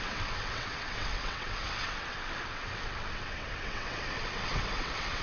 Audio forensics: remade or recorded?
remade